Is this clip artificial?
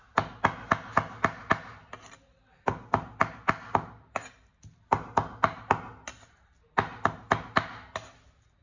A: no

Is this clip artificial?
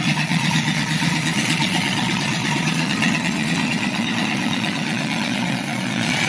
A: yes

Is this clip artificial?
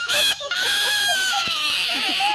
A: yes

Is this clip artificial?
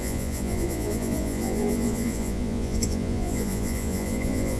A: yes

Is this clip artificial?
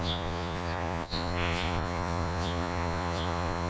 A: yes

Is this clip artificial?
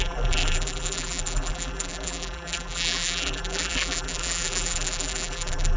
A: yes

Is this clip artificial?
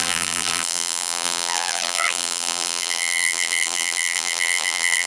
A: yes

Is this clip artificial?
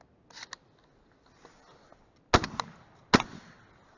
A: no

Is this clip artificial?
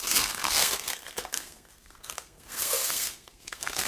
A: yes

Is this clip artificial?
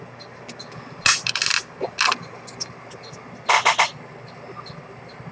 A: no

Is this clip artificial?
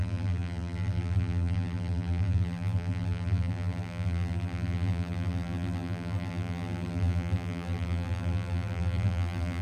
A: yes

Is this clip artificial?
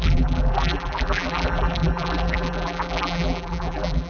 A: yes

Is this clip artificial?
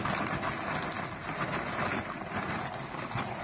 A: no